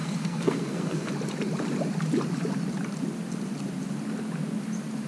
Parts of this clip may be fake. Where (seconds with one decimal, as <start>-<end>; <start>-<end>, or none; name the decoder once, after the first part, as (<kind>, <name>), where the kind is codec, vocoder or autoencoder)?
0.0-1.1 (codec, SNAC)